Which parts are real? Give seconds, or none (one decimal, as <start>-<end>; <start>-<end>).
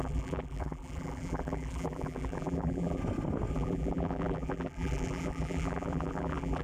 3.0-3.5